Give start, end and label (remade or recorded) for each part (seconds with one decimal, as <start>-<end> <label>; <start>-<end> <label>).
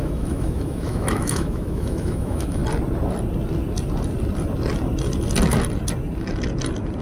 0.0-2.6 remade; 2.6-7.0 recorded